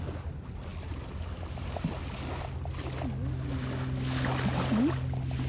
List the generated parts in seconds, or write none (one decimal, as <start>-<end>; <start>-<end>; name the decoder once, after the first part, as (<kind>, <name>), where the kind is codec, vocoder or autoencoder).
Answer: none